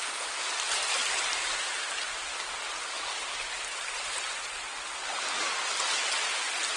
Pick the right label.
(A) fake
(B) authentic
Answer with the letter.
B